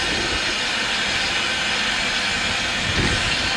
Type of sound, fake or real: real